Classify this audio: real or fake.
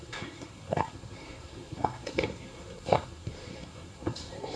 fake